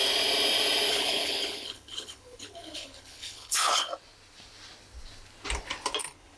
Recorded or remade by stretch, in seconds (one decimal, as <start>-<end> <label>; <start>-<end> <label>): 0.0-0.9 recorded; 0.9-3.9 remade; 3.9-6.0 recorded; 6.0-6.4 remade